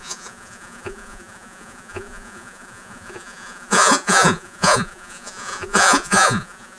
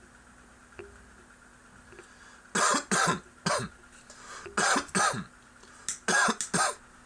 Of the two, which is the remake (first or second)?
first